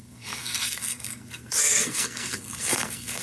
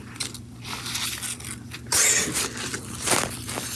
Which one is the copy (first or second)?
first